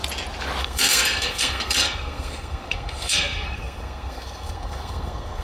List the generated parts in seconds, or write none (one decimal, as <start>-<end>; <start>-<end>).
0.6-5.4